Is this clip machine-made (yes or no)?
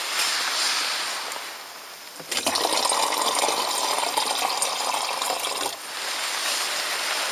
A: no